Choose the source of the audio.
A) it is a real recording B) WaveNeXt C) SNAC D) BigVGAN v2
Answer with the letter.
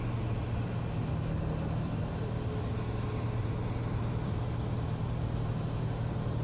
A